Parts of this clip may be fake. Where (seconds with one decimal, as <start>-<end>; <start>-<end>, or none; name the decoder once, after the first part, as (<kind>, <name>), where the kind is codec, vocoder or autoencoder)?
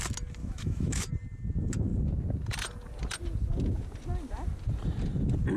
0.4-1.1 (autoencoder, DAC-VAE)